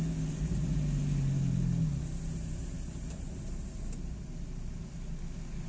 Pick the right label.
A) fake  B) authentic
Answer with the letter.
B